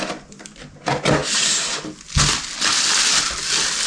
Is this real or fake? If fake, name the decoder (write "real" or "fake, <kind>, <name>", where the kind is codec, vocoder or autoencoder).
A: real